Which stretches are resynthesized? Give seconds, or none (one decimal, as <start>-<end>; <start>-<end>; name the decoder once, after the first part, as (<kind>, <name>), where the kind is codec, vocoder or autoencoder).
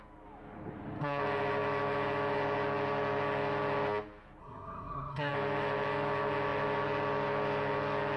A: 4.4-5.3 (codec, SNAC)